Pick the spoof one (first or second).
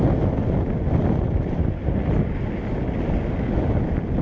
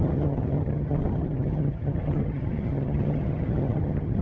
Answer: second